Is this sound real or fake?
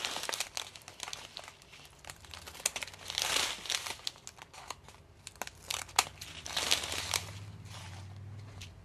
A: real